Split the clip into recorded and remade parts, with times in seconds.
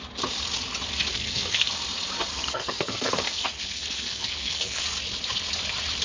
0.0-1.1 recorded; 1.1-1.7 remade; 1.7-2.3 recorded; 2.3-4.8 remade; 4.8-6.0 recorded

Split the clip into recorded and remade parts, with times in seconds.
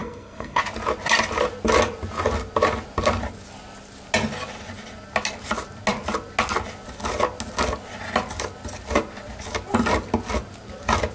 0.0-0.6 remade; 0.6-11.1 recorded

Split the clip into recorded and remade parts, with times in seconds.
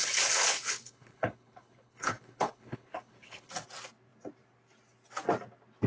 0.0-3.5 remade; 3.5-5.9 recorded